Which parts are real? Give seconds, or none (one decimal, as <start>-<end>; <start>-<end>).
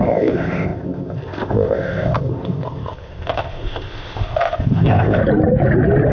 5.2-6.1